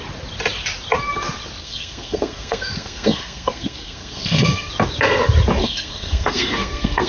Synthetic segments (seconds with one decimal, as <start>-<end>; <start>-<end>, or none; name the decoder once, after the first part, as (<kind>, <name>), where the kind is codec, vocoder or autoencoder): 1.6-4.7 (codec, SNAC); 5.6-7.1